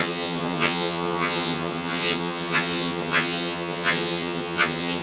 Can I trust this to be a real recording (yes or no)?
no